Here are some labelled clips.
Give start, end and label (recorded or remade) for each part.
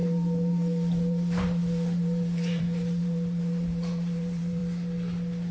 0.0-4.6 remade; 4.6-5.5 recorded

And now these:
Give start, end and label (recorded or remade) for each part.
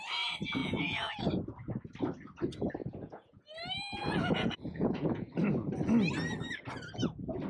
0.0-0.6 recorded; 0.6-1.2 remade; 1.2-2.8 recorded; 2.8-3.4 remade; 3.4-4.0 recorded; 4.0-5.3 remade; 5.3-7.5 recorded